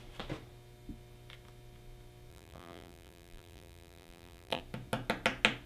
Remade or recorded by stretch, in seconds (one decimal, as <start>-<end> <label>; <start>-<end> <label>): 0.0-2.3 recorded; 2.3-4.6 remade; 4.6-5.7 recorded